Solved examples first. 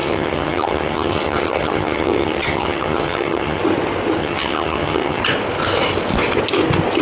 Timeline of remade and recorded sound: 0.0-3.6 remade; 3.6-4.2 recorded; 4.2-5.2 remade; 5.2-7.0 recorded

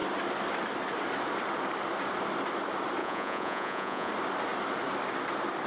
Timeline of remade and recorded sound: 0.0-3.0 recorded; 3.0-4.1 remade; 4.1-5.7 recorded

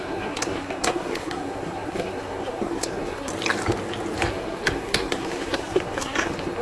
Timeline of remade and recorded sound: 0.0-3.3 remade; 3.3-4.3 recorded; 4.3-6.6 remade

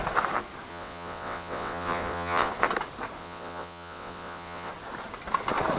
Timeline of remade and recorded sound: 0.0-0.7 recorded; 0.7-2.5 remade; 2.5-3.2 recorded; 3.2-4.7 remade; 4.7-5.8 recorded

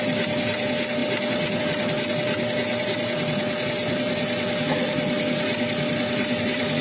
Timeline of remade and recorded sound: 0.0-6.8 recorded

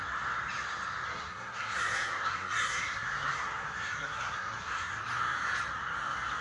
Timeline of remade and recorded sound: 0.0-1.1 recorded; 1.1-4.9 remade; 4.9-6.4 recorded